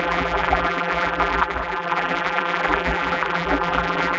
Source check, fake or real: fake